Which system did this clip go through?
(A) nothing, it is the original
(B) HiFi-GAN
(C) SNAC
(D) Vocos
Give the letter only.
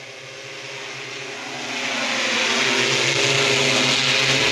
A